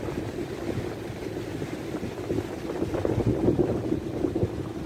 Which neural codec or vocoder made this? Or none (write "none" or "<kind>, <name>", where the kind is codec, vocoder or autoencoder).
none